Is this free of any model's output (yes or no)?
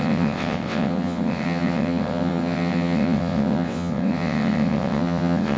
no